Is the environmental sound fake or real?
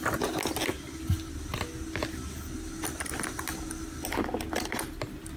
real